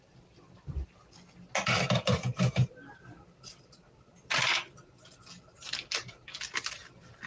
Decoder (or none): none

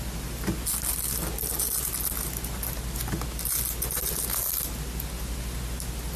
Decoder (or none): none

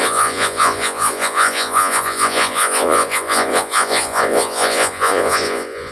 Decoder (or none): vocoder, Vocos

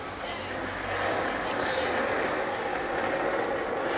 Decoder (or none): none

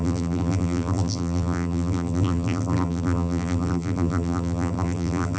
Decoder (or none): vocoder, BigVGAN v2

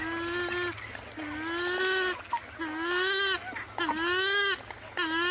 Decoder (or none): none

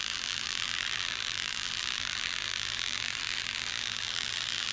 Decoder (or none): vocoder, BigVGAN v2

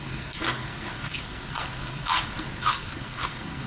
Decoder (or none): codec, SNAC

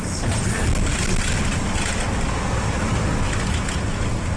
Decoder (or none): none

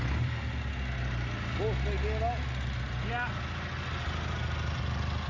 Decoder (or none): none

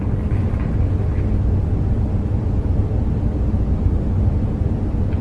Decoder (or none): none